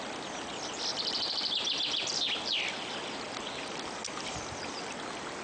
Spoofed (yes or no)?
no